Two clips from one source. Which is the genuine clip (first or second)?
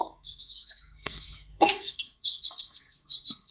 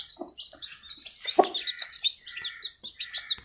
second